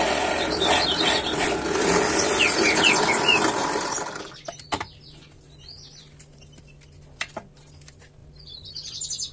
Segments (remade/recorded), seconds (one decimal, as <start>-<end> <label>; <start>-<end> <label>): 0.0-9.3 recorded